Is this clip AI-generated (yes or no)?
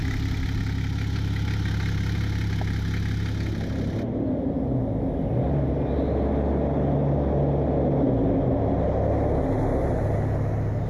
no